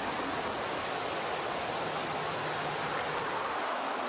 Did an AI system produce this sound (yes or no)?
no